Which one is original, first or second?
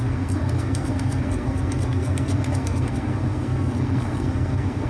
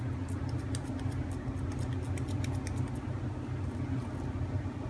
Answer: second